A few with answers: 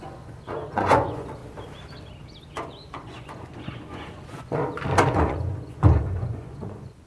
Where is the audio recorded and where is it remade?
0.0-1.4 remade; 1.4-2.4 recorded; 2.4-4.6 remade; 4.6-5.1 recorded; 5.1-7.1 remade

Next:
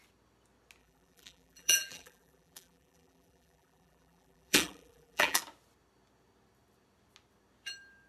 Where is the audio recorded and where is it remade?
0.0-0.8 recorded; 0.8-5.4 remade; 5.4-8.1 recorded

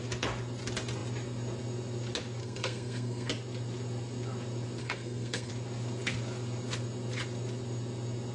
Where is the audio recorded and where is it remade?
0.0-2.4 recorded; 2.4-3.3 remade; 3.3-4.8 recorded; 4.8-5.5 remade; 5.5-8.3 recorded